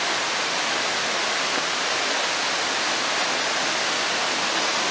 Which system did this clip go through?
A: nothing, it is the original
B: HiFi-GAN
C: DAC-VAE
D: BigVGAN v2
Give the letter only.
A